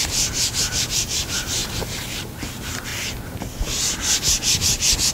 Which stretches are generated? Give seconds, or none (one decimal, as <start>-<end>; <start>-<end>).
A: 0.0-1.6; 2.2-2.9